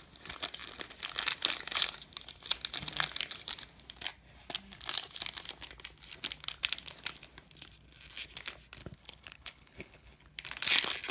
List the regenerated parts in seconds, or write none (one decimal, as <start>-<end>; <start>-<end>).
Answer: 8.8-10.2